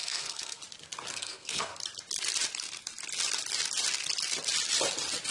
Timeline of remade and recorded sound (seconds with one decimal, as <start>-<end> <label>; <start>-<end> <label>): 0.0-0.6 remade; 0.6-1.1 recorded; 1.1-1.7 remade; 1.7-5.3 recorded